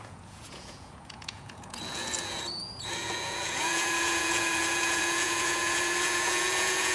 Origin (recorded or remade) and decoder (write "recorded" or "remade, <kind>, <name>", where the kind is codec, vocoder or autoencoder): remade, vocoder, Vocos